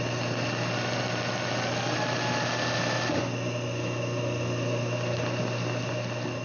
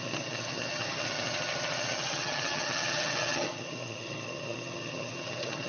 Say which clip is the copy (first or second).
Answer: second